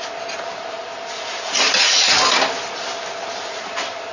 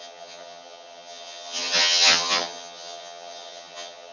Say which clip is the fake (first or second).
second